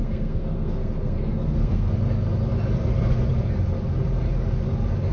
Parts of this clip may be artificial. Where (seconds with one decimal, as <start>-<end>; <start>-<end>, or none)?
0.0-1.9